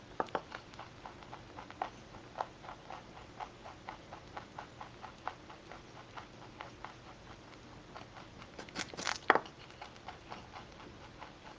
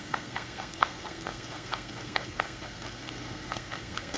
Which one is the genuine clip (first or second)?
first